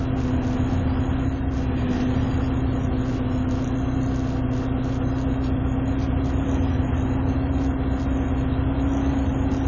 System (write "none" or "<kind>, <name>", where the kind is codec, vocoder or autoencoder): none